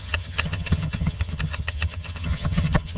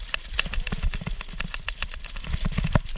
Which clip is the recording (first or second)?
second